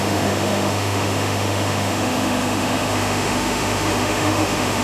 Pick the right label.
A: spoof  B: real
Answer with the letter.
A